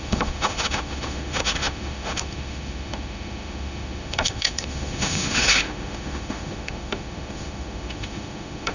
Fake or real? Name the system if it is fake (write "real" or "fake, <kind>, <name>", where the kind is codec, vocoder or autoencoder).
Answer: fake, autoencoder, DAC-VAE